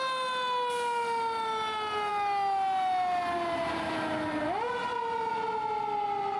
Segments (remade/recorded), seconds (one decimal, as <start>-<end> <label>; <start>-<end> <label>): 0.0-6.4 recorded